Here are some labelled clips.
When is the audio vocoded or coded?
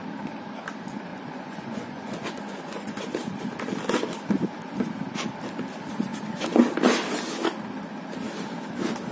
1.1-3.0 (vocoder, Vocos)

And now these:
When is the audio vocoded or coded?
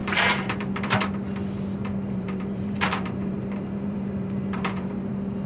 0.0-1.0 (vocoder, BigVGAN v2); 1.8-5.1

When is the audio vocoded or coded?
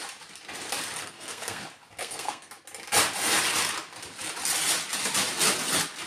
1.0-1.6 (codec, SNAC); 2.0-2.5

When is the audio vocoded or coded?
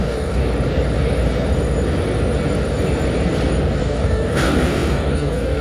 0.0-0.4 (codec, DAC); 3.8-5.6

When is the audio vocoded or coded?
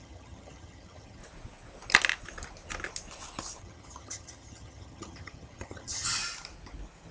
0.0-1.2 (vocoder, HiFi-GAN); 3.6-6.2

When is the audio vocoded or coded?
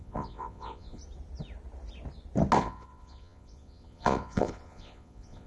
0.0-1.0 (vocoder, Vocos); 2.6-5.5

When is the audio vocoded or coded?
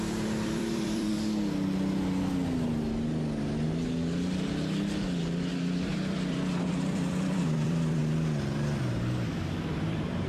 0.0-1.1 (vocoder, BigVGAN v2); 5.5-8.0; 9.7-10.3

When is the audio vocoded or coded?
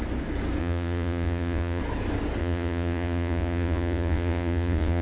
0.6-1.8 (vocoder, Vocos); 2.4-5.0